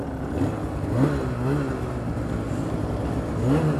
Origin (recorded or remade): recorded